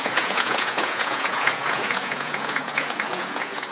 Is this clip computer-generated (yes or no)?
yes